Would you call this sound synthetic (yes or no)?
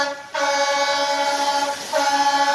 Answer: no